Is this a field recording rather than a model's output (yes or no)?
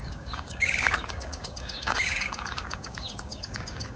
no